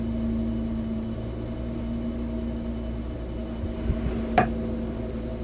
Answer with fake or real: real